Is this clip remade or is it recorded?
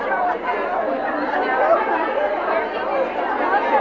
recorded